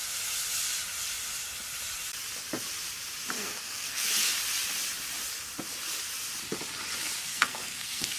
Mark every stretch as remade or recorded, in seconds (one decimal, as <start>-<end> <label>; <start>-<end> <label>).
0.0-3.4 recorded; 3.4-4.3 remade; 4.3-7.2 recorded; 7.2-8.2 remade